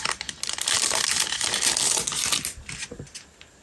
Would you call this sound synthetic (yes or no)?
no